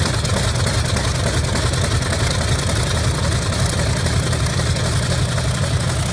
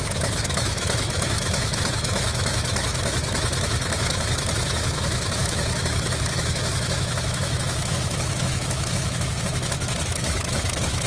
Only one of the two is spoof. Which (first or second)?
second